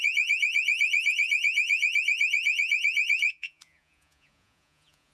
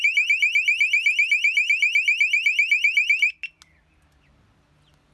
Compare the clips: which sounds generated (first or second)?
first